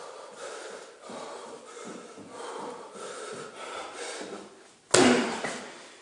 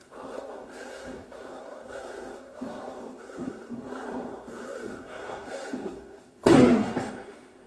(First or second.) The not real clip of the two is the second